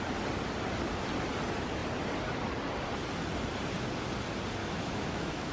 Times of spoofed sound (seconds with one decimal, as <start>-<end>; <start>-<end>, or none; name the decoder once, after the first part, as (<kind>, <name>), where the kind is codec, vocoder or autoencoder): 4.6-5.5 (autoencoder, DAC-VAE)